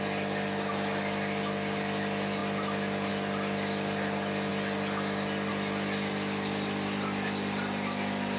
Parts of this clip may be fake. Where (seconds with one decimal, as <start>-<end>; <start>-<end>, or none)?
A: none